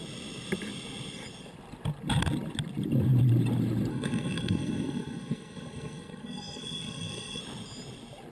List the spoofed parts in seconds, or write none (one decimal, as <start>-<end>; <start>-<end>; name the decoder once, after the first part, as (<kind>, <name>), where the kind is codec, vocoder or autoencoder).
3.9-7.4 (codec, SNAC)